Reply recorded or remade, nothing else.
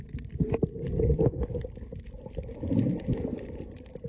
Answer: recorded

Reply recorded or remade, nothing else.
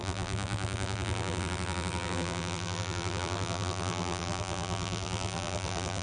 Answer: remade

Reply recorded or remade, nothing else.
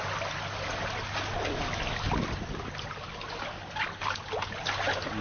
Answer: recorded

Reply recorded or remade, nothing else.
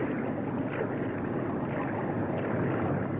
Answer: recorded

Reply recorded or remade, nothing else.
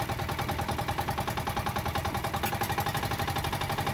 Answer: recorded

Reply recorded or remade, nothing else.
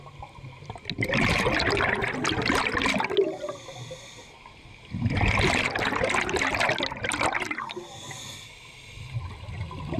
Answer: recorded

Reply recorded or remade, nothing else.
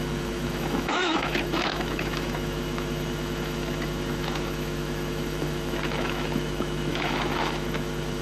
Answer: remade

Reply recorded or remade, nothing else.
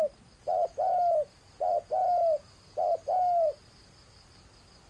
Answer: recorded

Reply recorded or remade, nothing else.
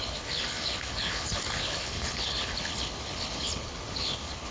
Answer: remade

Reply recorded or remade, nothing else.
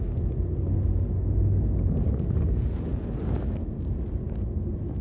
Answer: recorded